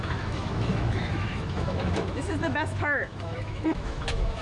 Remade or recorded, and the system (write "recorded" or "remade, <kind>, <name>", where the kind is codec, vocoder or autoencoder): remade, autoencoder, DAC-VAE